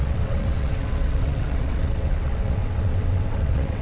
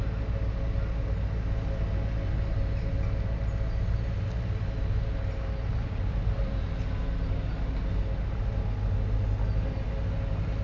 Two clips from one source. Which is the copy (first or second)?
first